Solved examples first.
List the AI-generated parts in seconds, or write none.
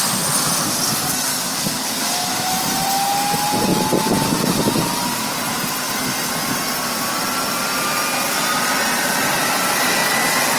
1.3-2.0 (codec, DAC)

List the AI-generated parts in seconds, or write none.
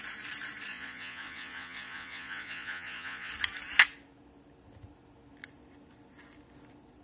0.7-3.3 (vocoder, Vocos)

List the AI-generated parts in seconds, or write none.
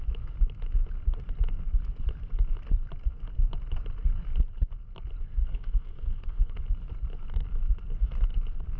5.4-6.6 (codec, SNAC)